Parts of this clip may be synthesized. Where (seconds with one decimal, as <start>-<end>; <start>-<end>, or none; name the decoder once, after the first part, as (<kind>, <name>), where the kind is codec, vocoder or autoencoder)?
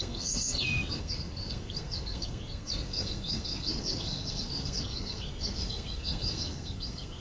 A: 0.0-7.2 (codec, SNAC)